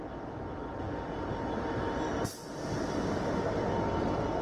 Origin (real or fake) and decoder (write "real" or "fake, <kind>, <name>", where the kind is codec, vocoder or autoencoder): real